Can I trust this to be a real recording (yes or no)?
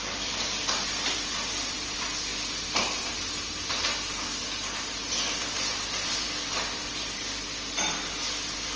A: yes